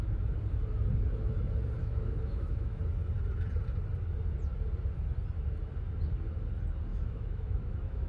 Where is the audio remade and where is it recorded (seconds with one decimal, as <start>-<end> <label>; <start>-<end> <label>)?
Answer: 0.0-1.8 recorded; 1.8-2.8 remade; 2.8-6.9 recorded; 6.9-8.1 remade

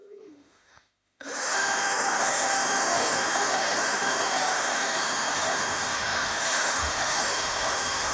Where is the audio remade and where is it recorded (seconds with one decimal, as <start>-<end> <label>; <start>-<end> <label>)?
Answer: 0.0-8.1 remade

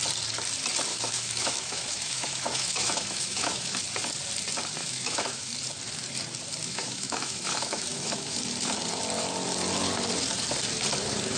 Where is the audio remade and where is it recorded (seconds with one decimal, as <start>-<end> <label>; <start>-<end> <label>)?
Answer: 0.0-0.9 recorded; 0.9-3.8 remade; 3.8-4.8 recorded; 4.8-5.5 remade; 5.5-6.6 recorded; 6.6-8.4 remade; 8.4-11.4 recorded

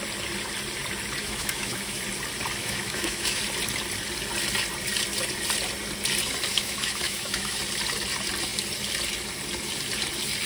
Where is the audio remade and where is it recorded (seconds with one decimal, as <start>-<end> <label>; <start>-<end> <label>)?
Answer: 0.0-1.2 recorded; 1.2-2.0 remade; 2.0-2.6 recorded; 2.6-3.4 remade; 3.4-6.5 recorded; 6.5-7.6 remade; 7.6-10.5 recorded

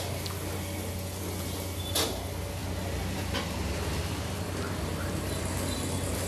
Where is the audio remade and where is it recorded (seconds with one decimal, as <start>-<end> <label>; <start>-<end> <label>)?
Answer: 0.0-6.3 recorded

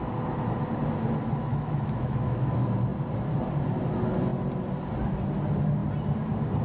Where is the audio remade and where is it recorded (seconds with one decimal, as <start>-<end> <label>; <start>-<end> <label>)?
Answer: 0.0-1.5 recorded; 1.5-2.5 remade; 2.5-6.6 recorded

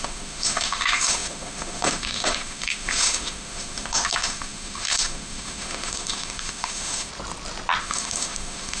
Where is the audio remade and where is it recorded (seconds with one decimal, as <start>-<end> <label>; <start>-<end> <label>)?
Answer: 0.0-7.1 remade; 7.1-7.8 recorded; 7.8-8.8 remade

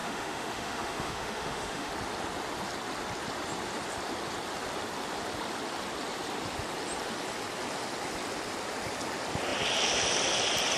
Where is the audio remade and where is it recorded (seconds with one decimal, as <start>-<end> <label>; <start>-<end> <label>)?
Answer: 0.0-1.9 remade; 1.9-10.8 recorded